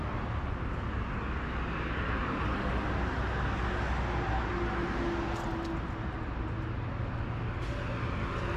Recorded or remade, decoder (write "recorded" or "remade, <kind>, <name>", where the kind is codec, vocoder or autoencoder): recorded